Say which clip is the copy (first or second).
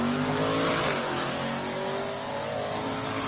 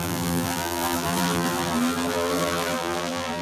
second